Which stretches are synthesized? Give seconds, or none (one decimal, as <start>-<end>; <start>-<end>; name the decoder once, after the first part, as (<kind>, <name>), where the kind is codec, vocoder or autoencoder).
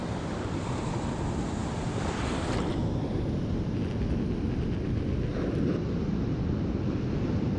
none